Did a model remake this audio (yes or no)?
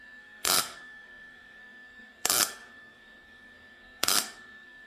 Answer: yes